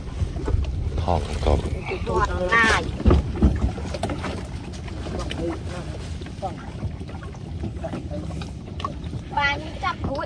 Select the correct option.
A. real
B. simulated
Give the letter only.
B